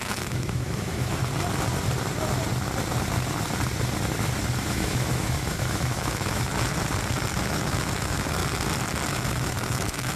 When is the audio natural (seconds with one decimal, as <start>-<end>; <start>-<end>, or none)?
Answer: 1.1-4.7; 6.5-7.5; 8.4-9.1